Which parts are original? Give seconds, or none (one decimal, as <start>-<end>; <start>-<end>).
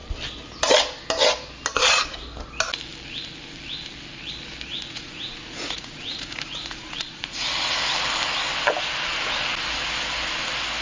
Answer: 0.0-4.7; 7.5-10.8